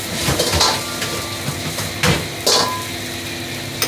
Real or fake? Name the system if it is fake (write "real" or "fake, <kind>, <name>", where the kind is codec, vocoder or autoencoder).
real